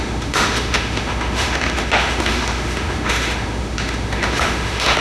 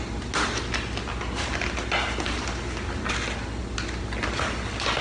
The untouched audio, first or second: second